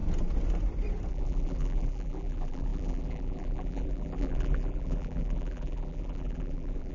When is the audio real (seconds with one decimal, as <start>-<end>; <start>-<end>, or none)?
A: 0.0-1.1